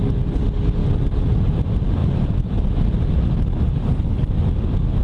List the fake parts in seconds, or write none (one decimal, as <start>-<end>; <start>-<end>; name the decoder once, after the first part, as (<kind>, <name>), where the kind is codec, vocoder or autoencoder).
3.8-4.3 (codec, HILCodec)